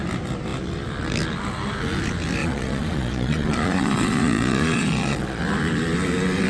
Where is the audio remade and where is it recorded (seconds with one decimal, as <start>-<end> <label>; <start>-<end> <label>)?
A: 0.0-2.4 recorded; 2.4-5.4 remade; 5.4-6.5 recorded